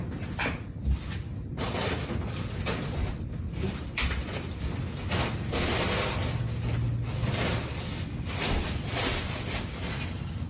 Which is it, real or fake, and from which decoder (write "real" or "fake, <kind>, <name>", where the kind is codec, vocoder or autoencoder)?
real